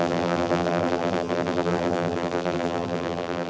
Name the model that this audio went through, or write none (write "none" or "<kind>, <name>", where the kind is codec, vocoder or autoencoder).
vocoder, BigVGAN v2